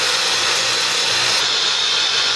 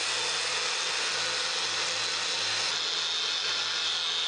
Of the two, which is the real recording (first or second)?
second